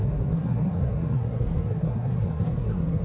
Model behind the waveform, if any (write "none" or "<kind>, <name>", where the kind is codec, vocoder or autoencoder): codec, SNAC